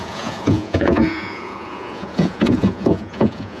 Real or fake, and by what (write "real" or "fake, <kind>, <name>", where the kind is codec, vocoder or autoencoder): fake, vocoder, Vocos